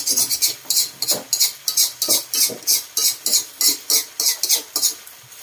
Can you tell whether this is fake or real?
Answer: real